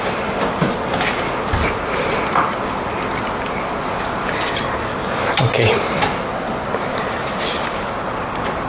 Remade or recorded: recorded